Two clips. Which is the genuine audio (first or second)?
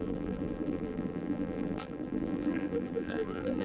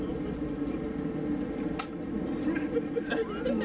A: second